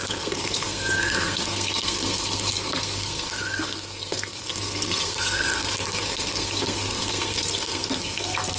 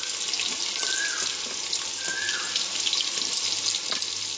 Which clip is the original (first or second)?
second